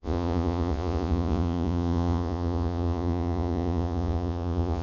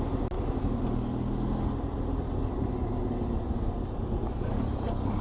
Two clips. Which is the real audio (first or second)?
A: second